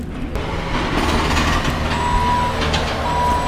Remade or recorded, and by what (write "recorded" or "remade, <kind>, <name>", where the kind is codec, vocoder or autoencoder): recorded